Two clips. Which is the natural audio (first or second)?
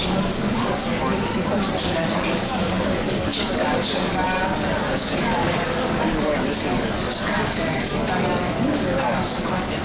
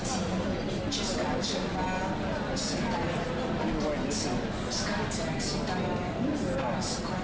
second